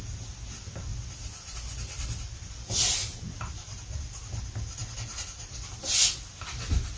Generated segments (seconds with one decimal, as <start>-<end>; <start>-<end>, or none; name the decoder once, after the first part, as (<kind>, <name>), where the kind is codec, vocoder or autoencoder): none